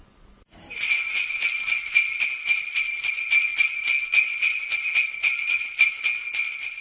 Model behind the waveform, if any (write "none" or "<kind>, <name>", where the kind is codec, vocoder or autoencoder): none